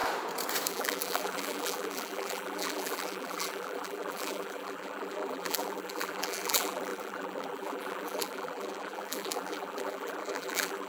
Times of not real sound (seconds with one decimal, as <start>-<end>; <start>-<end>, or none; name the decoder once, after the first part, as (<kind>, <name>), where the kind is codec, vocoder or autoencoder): 0.7-10.9 (vocoder, BigVGAN v2)